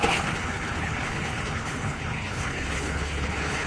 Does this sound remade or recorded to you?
remade